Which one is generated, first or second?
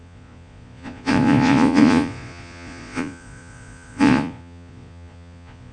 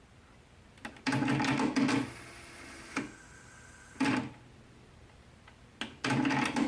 first